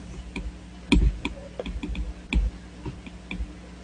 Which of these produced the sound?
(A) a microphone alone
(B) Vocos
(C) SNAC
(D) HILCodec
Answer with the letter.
A